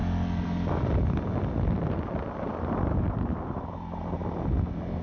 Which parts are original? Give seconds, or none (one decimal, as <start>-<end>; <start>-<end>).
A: 0.0-3.0; 4.2-5.0